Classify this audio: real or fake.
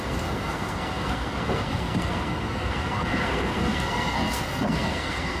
fake